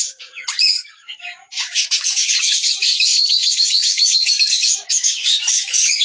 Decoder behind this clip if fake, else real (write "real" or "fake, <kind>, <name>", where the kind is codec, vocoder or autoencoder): fake, codec, DAC